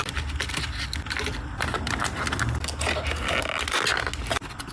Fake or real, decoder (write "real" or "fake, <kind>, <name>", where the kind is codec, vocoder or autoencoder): real